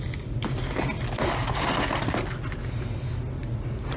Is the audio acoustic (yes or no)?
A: yes